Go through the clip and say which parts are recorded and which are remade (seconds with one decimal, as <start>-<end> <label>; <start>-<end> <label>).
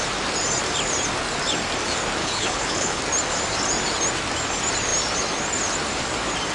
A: 0.0-2.2 recorded; 2.2-3.0 remade; 3.0-6.5 recorded